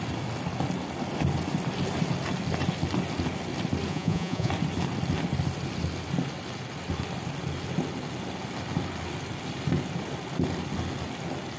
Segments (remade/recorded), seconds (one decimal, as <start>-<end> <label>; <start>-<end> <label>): 0.0-3.9 recorded; 3.9-4.5 remade; 4.5-11.6 recorded